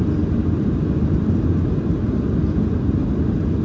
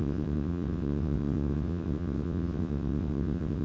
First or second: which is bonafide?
first